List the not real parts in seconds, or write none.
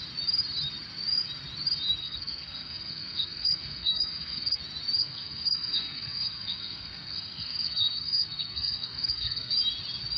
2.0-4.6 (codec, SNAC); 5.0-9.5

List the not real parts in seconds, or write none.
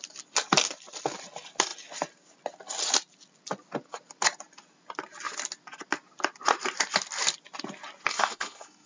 8.1-8.9 (codec, SNAC)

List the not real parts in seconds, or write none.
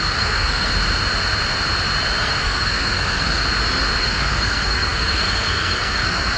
0.0-0.7 (codec, SNAC); 2.2-3.4; 4.0-6.4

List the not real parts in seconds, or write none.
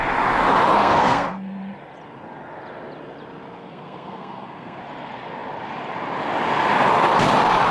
0.8-1.3 (codec, SNAC); 3.6-4.8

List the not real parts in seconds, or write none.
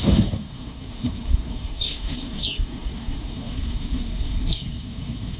0.0-5.4 (codec, SNAC)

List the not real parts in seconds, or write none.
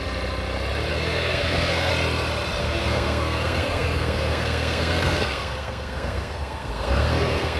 0.9-1.9 (codec, SNAC); 2.6-7.6